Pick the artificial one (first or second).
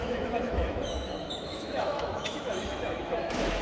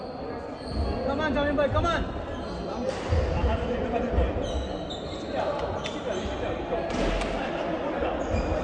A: first